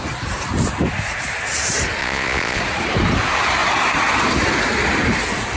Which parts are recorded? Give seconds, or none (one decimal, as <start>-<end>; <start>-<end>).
0.0-2.0; 2.6-5.6